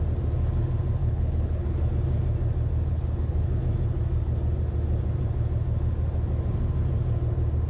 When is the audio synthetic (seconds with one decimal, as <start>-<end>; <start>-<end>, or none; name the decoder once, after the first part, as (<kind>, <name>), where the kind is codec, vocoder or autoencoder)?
1.0-1.9 (codec, HILCodec); 2.9-3.6